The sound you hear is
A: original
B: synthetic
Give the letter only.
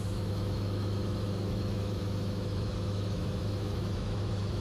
B